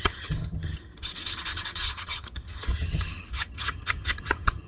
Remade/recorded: remade